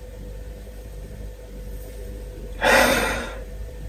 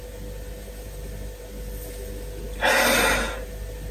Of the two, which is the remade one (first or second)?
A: first